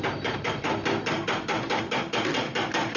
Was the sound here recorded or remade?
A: recorded